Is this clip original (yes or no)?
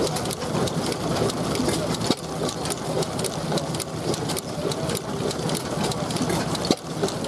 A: yes